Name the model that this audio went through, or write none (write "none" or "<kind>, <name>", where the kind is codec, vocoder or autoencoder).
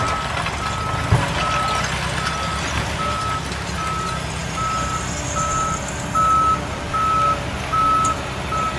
none